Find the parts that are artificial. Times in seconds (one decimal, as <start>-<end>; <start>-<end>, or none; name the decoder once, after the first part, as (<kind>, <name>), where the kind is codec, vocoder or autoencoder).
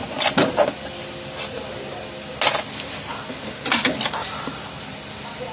4.2-4.8 (vocoder, BigVGAN v2)